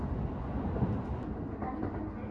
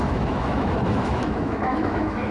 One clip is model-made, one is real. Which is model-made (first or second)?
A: second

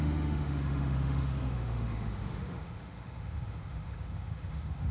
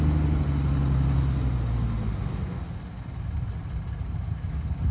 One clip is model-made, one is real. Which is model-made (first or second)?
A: first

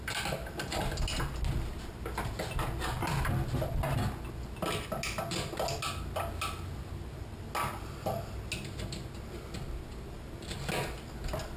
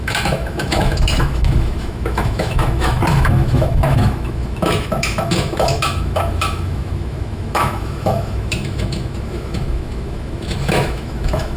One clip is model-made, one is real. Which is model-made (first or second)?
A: second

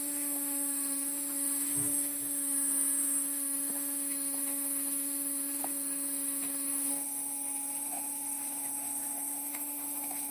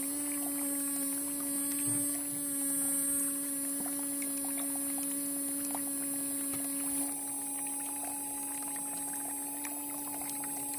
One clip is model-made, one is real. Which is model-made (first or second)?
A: first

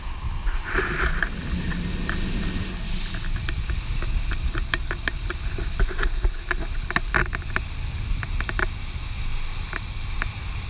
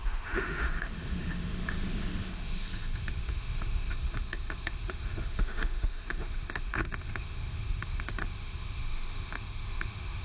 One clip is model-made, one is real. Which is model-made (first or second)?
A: second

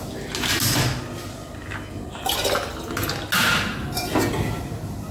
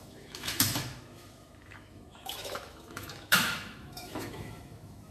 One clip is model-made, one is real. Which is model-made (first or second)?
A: second